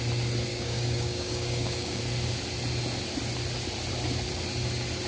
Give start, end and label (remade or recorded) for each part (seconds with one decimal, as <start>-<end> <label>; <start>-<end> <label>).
0.0-0.5 recorded; 0.5-2.0 remade; 2.0-5.1 recorded